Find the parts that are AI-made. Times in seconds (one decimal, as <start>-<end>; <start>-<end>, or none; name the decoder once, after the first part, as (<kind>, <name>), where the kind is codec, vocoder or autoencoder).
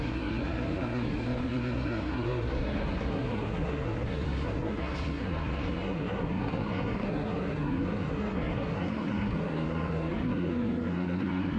0.0-11.6 (codec, SNAC)